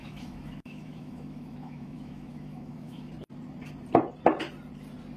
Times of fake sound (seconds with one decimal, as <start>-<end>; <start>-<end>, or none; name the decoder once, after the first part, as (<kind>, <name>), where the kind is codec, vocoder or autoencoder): 0.0-3.1 (autoencoder, DAC-VAE)